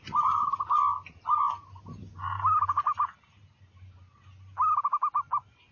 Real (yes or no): yes